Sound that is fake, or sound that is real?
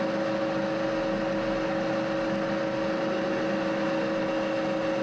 real